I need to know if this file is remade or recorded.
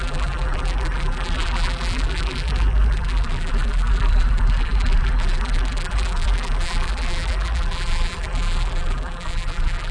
remade